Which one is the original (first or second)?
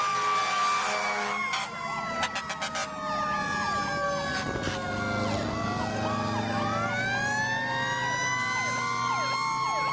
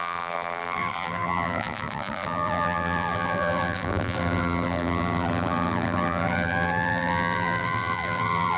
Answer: first